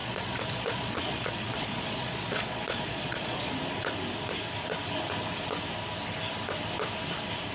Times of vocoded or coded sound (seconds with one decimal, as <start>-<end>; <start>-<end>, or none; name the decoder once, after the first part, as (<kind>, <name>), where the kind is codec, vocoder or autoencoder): 0.0-3.5 (vocoder, Vocos)